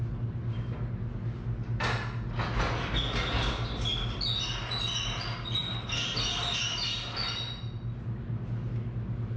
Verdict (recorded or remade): recorded